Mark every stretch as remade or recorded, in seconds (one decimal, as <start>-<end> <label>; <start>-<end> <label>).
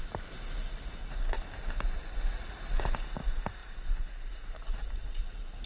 0.0-1.0 recorded; 1.0-2.2 remade; 2.2-3.6 recorded; 3.6-5.7 remade